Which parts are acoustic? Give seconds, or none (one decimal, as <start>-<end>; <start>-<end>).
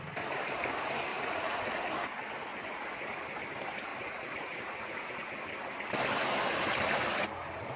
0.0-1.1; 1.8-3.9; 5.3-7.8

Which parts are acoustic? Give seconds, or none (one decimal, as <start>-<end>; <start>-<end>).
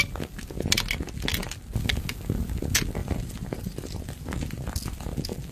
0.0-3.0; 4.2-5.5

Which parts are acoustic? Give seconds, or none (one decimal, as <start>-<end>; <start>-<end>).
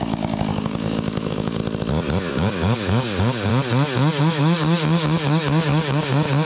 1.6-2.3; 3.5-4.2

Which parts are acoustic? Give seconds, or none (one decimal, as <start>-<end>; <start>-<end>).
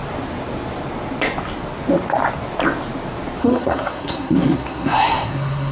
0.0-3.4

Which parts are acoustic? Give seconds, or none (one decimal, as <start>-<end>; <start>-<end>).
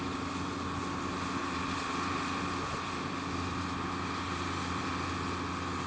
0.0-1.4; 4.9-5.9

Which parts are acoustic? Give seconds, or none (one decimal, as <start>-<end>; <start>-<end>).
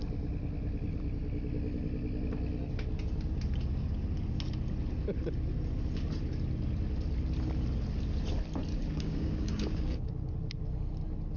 0.0-8.7; 10.1-11.4